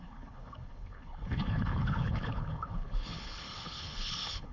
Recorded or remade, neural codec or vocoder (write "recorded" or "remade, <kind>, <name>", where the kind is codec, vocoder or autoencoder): remade, codec, HILCodec